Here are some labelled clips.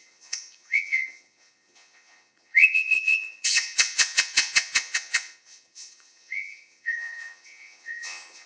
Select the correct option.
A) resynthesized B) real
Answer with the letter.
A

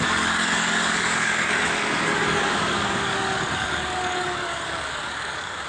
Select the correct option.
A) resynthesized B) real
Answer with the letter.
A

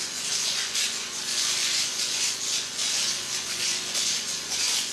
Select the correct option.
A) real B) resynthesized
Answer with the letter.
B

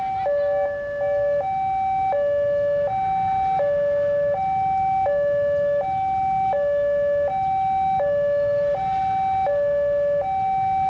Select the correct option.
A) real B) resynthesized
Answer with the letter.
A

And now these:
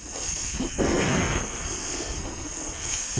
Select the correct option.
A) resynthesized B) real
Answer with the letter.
A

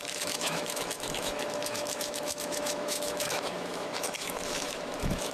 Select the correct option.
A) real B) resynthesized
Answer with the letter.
B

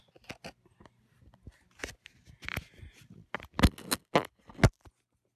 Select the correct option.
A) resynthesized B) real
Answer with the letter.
B